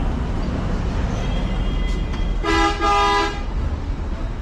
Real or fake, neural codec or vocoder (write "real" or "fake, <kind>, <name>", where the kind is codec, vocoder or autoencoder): real